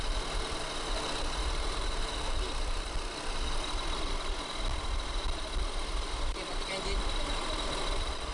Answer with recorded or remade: recorded